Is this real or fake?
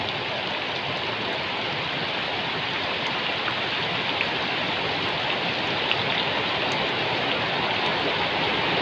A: real